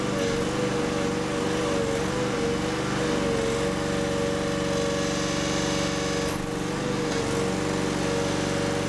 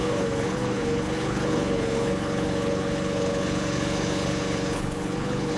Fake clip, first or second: second